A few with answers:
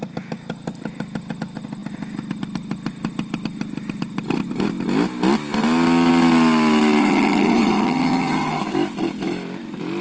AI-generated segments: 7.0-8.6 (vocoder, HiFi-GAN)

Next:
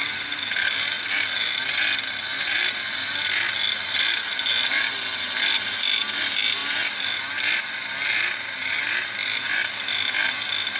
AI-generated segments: 0.0-1.1 (vocoder, BigVGAN v2)